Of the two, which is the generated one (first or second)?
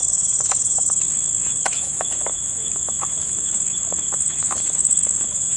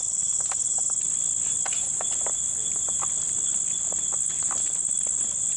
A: first